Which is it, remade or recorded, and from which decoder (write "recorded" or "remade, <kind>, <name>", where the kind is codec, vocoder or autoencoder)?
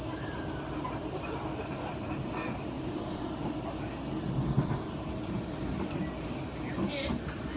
recorded